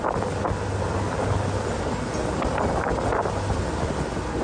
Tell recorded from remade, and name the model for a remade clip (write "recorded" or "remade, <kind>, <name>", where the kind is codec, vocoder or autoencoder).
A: recorded